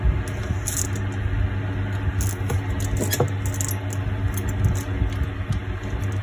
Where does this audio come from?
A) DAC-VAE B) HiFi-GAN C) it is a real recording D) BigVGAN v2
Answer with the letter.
C